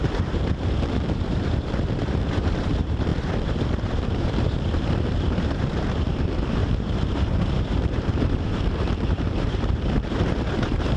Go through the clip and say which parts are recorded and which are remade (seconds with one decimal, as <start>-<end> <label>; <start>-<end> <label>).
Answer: 0.0-11.0 remade